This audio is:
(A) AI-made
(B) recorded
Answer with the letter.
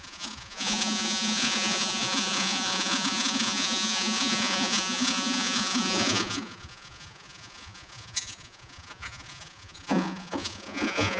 A